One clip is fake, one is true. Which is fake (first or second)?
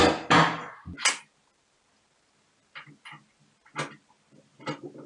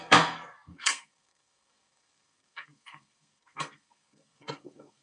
second